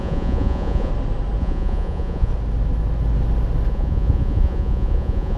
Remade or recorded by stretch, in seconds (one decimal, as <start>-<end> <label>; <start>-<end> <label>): 0.0-0.9 remade; 0.9-1.4 recorded; 1.4-2.3 remade; 2.3-3.7 recorded; 3.7-5.4 remade